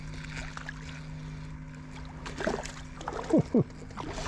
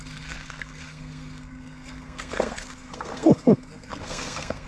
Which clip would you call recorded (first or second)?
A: first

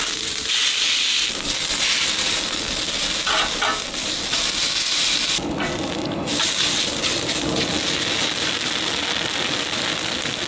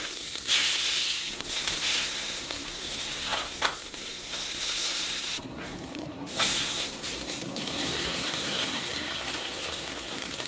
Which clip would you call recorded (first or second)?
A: first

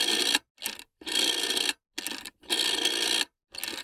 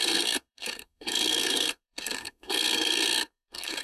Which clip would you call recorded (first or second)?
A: first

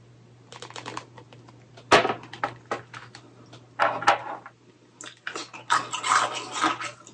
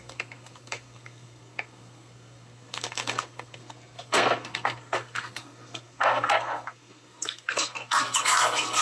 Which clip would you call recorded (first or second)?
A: first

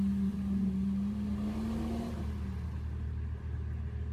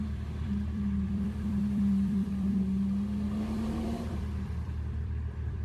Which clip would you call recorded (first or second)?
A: first